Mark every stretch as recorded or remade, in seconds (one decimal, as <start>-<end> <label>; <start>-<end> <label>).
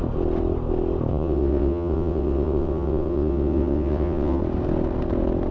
0.0-1.1 recorded; 1.1-4.4 remade; 4.4-5.5 recorded